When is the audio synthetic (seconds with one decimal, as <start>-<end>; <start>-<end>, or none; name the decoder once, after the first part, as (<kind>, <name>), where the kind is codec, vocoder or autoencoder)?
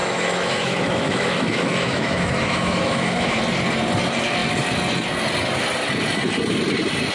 0.0-3.4 (autoencoder, DAC-VAE)